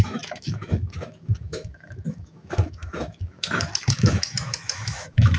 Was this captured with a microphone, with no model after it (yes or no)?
no